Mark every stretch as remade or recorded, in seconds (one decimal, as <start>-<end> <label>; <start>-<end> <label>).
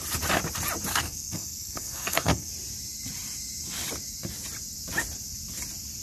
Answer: 0.0-0.9 recorded; 0.9-2.5 remade; 2.5-6.0 recorded